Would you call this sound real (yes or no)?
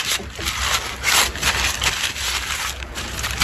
yes